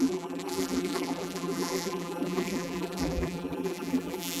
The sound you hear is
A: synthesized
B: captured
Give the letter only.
A